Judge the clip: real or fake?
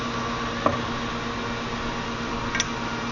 real